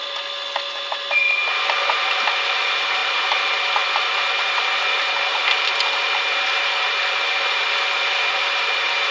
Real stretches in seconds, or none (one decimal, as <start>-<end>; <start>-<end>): none